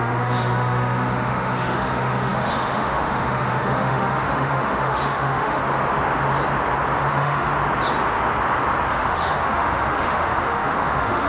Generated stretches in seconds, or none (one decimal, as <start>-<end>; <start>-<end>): 0.0-5.6; 7.0-7.5; 8.9-11.3